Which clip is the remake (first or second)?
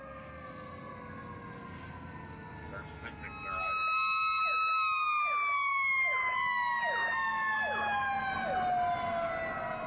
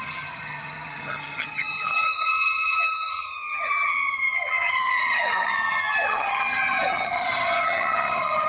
second